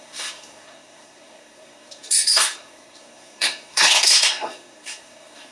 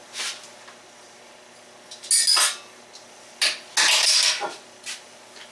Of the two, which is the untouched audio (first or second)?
second